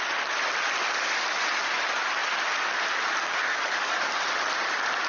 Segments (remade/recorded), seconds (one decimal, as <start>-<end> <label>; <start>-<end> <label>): 0.0-3.5 recorded; 3.5-4.1 remade; 4.1-5.1 recorded